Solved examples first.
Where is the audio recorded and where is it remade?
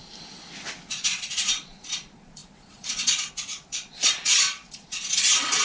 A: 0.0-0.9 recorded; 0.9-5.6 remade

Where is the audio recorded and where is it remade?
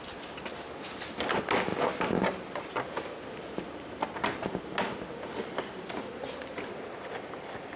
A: 0.0-7.8 recorded